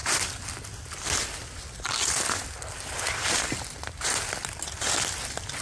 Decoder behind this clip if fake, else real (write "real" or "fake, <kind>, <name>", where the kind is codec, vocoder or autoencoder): real